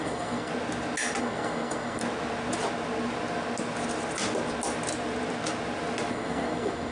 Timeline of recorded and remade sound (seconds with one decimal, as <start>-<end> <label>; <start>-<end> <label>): 0.0-0.5 remade; 0.5-1.2 recorded; 1.2-2.0 remade; 2.0-6.1 recorded; 6.1-6.9 remade